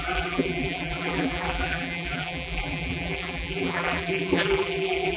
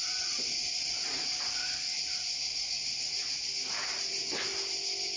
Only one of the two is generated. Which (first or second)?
first